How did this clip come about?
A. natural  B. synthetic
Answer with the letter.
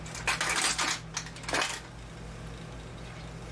A